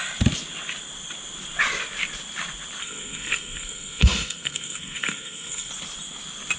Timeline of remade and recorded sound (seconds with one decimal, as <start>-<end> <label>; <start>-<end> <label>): 0.0-2.8 recorded; 2.8-5.7 remade; 5.7-6.6 recorded